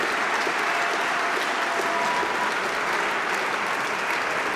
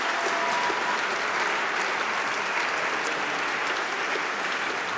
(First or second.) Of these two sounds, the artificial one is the second